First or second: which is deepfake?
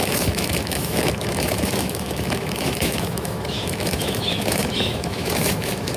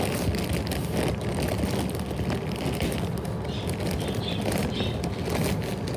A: first